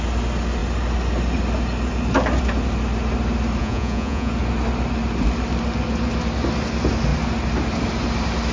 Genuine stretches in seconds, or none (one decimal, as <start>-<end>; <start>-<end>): 0.0-3.6; 4.3-8.5